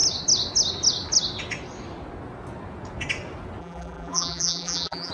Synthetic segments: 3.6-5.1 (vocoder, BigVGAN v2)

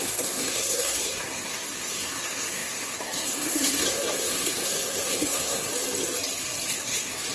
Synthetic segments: 0.0-5.7 (codec, SNAC); 6.7-7.3

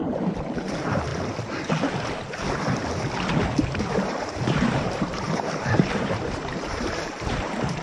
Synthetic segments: 0.0-1.1 (vocoder, BigVGAN v2); 3.9-7.8

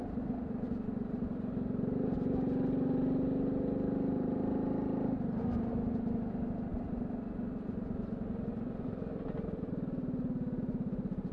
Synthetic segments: none

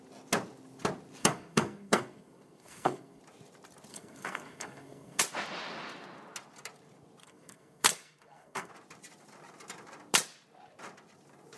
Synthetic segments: 1.2-3.2 (codec, SNAC); 3.9-5.2; 7.2-8.7